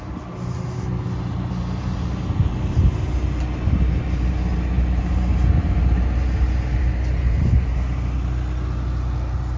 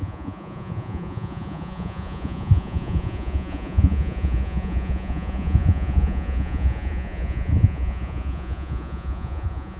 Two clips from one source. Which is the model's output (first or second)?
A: second